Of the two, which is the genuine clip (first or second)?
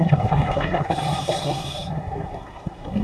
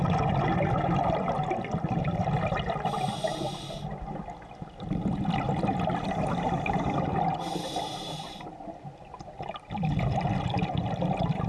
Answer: second